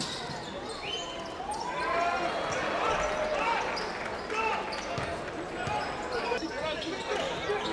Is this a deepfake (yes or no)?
no